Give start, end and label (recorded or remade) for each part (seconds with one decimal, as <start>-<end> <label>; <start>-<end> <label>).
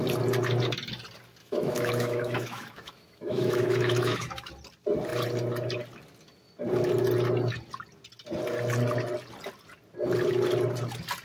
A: 0.0-1.4 recorded; 1.4-4.5 remade; 4.5-11.2 recorded